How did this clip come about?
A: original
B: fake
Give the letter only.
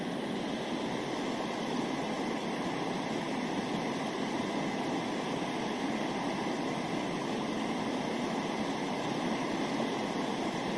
A